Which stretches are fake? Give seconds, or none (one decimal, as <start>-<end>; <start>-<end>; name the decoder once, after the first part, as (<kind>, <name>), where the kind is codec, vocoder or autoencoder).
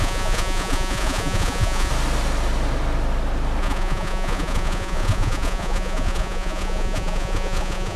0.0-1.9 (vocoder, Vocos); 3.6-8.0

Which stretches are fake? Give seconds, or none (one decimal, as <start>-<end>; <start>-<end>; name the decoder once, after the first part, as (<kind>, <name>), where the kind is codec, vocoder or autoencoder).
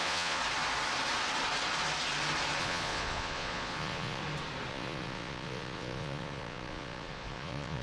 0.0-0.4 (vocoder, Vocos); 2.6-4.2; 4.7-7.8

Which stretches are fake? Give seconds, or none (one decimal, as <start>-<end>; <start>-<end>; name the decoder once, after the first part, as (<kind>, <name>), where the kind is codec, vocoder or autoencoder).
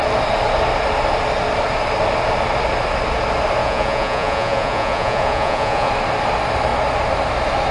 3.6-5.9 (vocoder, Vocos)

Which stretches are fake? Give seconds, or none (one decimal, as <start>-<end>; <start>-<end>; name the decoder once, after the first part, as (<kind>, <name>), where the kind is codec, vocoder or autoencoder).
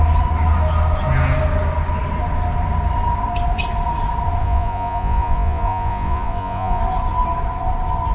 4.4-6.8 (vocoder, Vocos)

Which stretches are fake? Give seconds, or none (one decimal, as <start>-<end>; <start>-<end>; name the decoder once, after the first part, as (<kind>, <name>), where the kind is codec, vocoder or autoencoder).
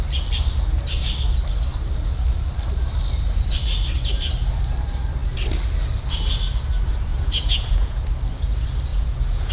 7.1-8.1 (vocoder, Vocos); 8.9-9.5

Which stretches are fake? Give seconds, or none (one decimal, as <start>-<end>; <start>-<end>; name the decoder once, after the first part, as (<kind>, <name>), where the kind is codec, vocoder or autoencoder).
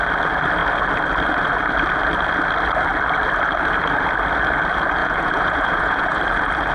5.0-6.2 (vocoder, Vocos)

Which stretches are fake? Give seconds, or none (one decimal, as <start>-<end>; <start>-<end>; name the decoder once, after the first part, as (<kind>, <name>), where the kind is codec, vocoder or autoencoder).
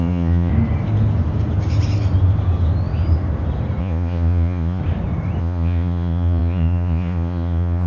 0.0-0.5 (vocoder, Vocos); 3.8-4.8; 5.4-7.9